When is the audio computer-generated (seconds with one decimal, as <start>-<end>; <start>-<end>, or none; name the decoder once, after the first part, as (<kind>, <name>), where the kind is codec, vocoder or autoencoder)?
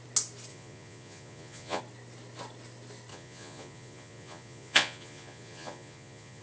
0.5-1.8 (vocoder, Vocos); 3.1-6.4